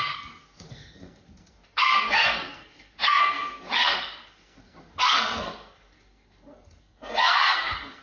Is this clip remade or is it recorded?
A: remade